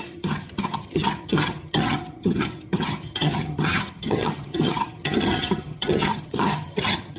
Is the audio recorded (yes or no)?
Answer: no